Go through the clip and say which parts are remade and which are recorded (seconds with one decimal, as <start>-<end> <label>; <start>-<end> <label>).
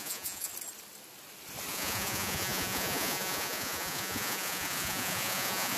0.0-0.5 remade; 0.5-1.7 recorded; 1.7-5.8 remade